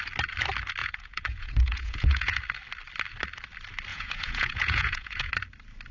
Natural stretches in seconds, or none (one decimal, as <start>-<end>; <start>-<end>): 0.0-0.8; 2.4-3.9; 5.3-5.9